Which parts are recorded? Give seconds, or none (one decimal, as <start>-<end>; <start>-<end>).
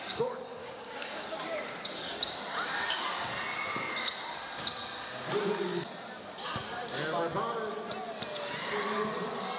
0.0-0.6; 3.3-9.6